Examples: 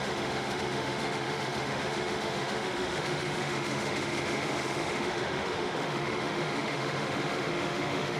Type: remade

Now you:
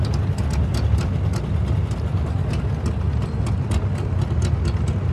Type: recorded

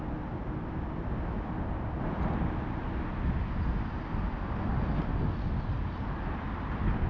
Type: recorded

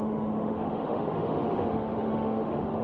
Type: remade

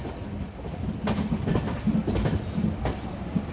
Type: recorded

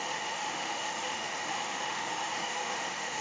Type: remade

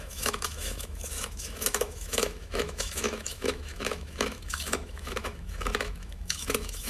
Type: remade